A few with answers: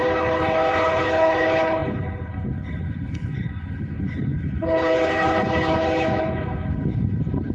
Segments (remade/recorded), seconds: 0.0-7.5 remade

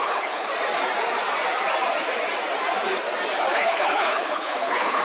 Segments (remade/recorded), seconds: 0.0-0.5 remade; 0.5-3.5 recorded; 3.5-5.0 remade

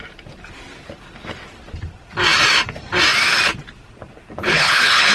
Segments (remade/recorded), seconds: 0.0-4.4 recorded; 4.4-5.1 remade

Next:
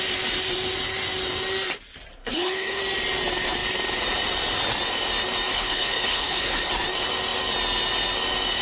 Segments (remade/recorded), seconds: 0.0-2.2 recorded; 2.2-2.8 remade; 2.8-5.5 recorded; 5.5-6.7 remade; 6.7-8.6 recorded

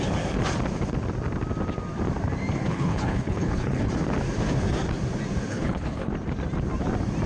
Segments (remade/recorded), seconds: 0.0-2.7 recorded; 2.7-3.9 remade; 3.9-5.5 recorded; 5.5-6.1 remade; 6.1-7.3 recorded